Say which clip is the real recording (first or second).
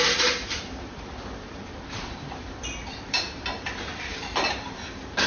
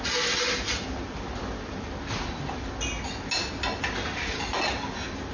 second